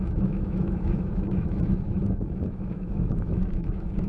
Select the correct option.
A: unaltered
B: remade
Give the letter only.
B